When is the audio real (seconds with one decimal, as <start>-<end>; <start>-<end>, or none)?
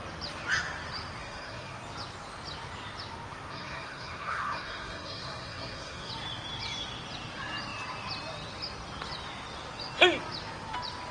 0.0-1.2; 1.8-3.5; 6.1-11.1